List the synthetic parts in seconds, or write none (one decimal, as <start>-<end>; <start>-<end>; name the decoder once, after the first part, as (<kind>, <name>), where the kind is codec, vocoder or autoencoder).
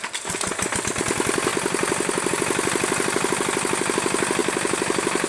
none